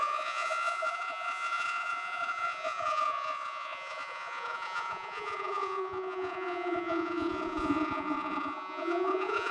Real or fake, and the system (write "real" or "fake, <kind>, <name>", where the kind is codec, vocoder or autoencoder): fake, vocoder, Vocos